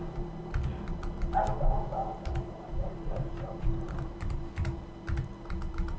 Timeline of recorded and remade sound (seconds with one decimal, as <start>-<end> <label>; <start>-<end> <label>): 0.0-2.0 recorded; 2.0-4.4 remade; 4.4-6.0 recorded